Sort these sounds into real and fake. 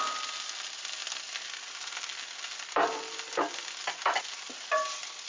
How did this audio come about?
real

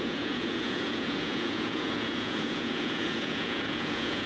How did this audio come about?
fake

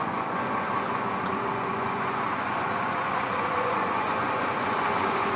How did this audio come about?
fake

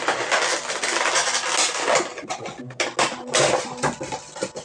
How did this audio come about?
real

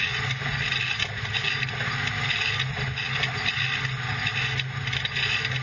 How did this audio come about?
real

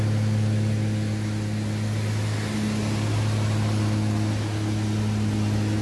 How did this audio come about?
real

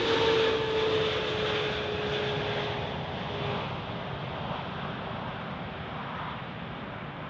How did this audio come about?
real